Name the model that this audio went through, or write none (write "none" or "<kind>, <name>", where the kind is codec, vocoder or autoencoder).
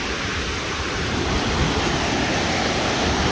none